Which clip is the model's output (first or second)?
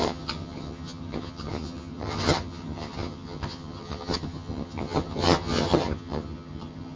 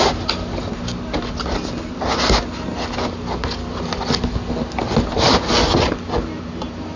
first